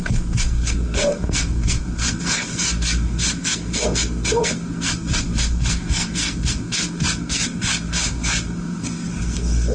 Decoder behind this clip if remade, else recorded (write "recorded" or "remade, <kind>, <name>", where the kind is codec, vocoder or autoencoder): remade, codec, SNAC